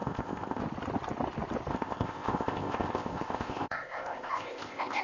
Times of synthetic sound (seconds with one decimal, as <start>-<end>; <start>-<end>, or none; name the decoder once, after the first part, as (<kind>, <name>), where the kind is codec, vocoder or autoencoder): 0.0-0.6 (codec, ZipCodec); 1.7-5.0